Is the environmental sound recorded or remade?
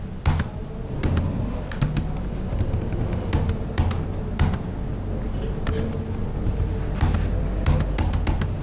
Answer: recorded